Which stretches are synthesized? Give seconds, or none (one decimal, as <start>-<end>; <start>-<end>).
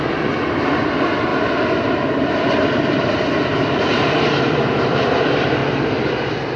0.0-6.6